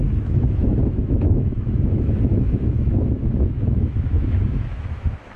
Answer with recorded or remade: remade